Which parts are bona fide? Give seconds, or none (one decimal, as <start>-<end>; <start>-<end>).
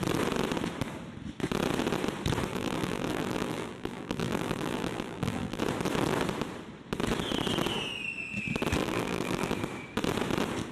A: 0.0-2.5; 5.6-8.8; 9.5-10.7